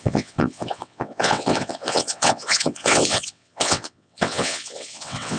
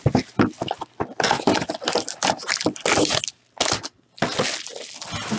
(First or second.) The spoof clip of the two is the first